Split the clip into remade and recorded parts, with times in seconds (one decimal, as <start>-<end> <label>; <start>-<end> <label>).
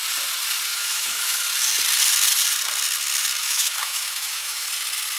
0.0-0.7 recorded; 0.7-1.4 remade; 1.4-3.4 recorded; 3.4-4.7 remade; 4.7-5.2 recorded